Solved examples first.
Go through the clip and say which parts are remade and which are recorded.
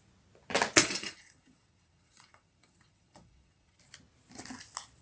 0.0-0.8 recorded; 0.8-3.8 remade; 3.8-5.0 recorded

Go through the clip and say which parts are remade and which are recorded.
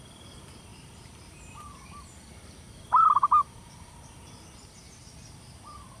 0.0-0.7 recorded; 0.7-4.3 remade; 4.3-6.0 recorded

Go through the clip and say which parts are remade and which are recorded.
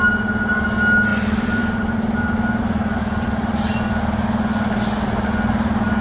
0.0-1.1 recorded; 1.1-4.0 remade; 4.0-6.0 recorded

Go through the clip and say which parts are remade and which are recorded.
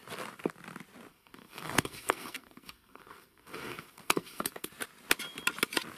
0.0-1.1 recorded; 1.1-4.7 remade; 4.7-6.0 recorded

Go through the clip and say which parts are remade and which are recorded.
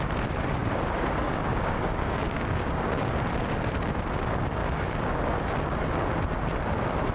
0.0-0.6 recorded; 0.6-3.1 remade; 3.1-4.6 recorded; 4.6-5.3 remade; 5.3-7.1 recorded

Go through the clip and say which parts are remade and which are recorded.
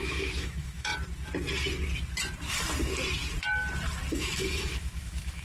0.0-0.9 remade; 0.9-4.1 recorded; 4.1-5.4 remade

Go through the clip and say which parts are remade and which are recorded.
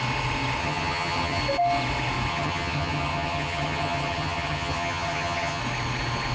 0.0-0.6 recorded; 0.6-1.4 remade; 1.4-2.3 recorded; 2.3-5.6 remade; 5.6-6.3 recorded